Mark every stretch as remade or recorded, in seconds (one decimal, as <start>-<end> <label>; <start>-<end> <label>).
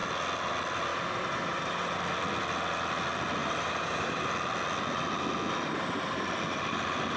0.0-0.9 recorded; 0.9-2.0 remade; 2.0-3.4 recorded; 3.4-4.2 remade; 4.2-7.2 recorded